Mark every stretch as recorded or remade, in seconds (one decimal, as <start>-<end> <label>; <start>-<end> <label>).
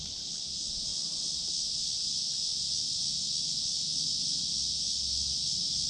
0.0-5.9 recorded